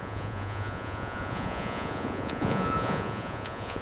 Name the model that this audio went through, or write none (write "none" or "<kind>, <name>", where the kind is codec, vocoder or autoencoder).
vocoder, Vocos